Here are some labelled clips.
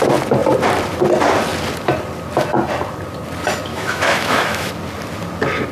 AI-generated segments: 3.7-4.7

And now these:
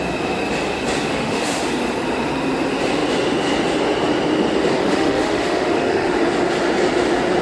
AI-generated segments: 1.1-1.6; 4.8-6.2

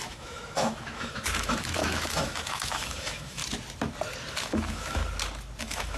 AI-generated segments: 0.0-3.4; 4.4-5.0; 5.6-6.0

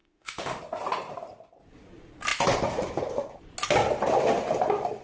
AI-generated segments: 0.0-0.6

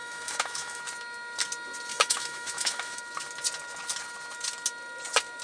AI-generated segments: 0.0-0.8; 1.9-3.0